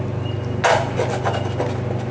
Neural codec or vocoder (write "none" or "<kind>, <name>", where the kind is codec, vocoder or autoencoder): none